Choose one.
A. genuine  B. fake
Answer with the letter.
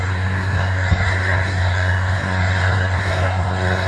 B